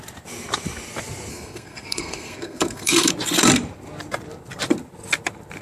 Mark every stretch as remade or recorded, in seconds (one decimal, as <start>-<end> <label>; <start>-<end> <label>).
0.0-1.3 recorded; 1.3-3.1 remade; 3.1-5.6 recorded